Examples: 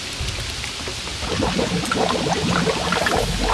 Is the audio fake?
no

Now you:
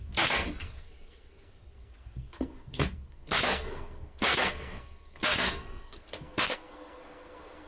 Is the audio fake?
yes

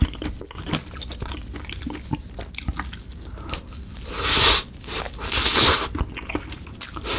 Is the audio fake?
no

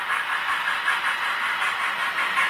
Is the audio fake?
no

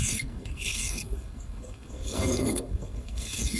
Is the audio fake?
yes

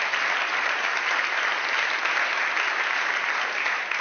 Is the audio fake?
no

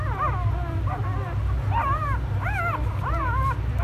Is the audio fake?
no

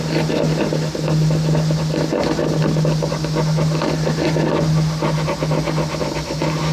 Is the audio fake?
no